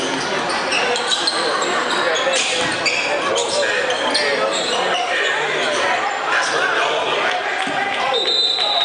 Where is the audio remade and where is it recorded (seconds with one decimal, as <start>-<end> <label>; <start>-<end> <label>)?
0.0-0.7 recorded; 0.7-2.0 remade; 2.0-4.5 recorded; 4.5-5.2 remade; 5.2-8.8 recorded